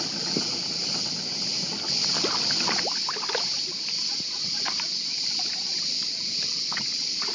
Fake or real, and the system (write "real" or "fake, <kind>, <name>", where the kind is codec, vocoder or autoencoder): real